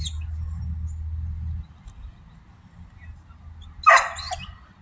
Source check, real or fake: real